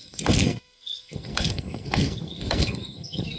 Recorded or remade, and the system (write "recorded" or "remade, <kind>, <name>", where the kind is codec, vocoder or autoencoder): remade, codec, SNAC